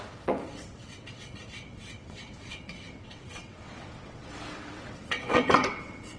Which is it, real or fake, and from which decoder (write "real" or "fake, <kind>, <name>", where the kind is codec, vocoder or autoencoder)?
fake, vocoder, WaveNeXt